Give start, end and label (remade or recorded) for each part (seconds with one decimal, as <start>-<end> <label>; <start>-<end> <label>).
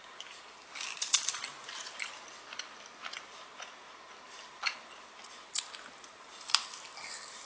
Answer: 0.0-0.7 recorded; 0.7-4.3 remade; 4.3-7.5 recorded